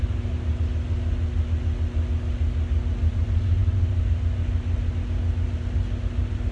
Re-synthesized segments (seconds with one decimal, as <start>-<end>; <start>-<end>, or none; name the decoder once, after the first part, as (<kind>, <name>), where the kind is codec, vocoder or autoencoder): none